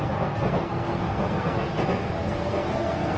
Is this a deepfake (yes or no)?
yes